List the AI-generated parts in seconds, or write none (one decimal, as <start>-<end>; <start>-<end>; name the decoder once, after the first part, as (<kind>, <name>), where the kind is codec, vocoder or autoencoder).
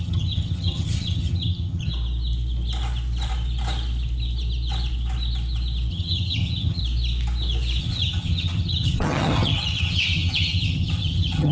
0.0-1.9 (vocoder, HiFi-GAN); 5.9-6.8; 7.8-11.5